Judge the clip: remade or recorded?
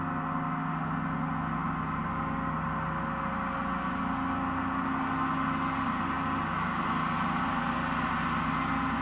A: recorded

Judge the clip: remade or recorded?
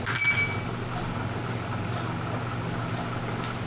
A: recorded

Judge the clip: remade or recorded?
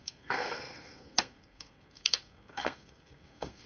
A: remade